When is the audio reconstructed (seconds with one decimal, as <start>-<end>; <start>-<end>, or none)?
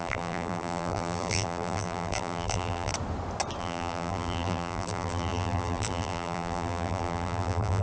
0.0-2.9; 3.6-7.8